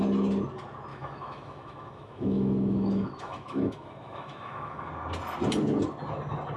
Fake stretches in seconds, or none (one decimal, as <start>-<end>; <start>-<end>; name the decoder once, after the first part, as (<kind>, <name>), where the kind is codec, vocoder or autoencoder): 0.9-4.9 (autoencoder, DAC-VAE)